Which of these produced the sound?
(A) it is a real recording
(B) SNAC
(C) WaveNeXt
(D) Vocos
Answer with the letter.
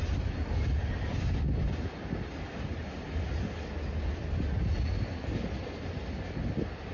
A